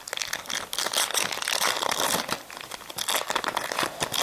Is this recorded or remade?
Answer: recorded